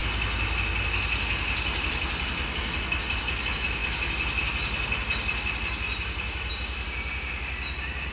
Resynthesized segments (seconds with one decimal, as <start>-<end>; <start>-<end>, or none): none